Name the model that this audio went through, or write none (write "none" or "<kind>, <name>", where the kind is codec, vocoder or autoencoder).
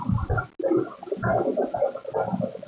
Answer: none